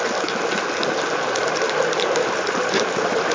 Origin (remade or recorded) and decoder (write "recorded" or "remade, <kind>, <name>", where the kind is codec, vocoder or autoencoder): recorded